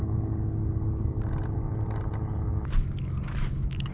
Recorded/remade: recorded